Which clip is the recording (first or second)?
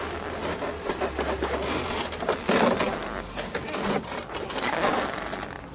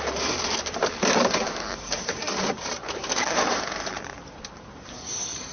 first